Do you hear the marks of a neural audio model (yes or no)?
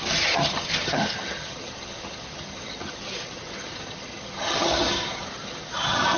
yes